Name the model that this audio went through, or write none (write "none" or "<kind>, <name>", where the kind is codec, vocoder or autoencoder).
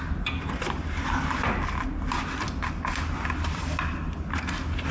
none